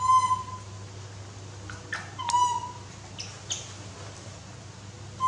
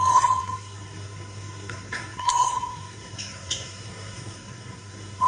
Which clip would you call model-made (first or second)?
second